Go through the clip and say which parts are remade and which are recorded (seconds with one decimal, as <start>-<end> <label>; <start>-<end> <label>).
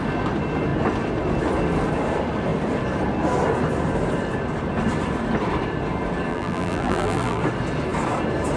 0.0-6.3 recorded; 6.3-7.4 remade; 7.4-8.6 recorded